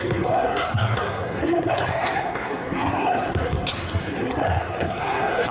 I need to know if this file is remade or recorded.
remade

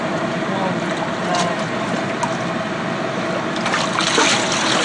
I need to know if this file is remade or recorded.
recorded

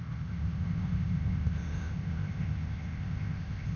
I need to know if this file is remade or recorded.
remade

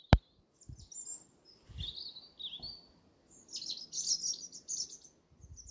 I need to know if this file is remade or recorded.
recorded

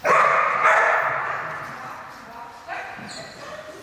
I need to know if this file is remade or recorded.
recorded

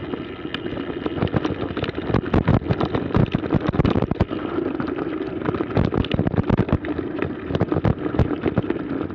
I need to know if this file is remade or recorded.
recorded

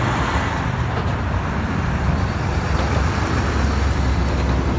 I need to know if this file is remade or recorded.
remade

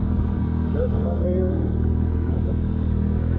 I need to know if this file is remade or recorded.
remade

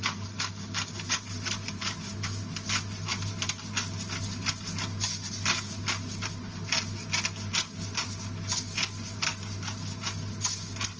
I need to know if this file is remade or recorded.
recorded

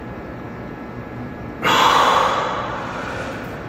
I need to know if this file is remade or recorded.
recorded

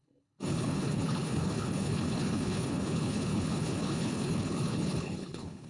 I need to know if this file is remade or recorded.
remade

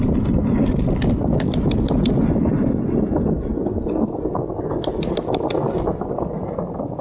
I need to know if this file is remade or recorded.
recorded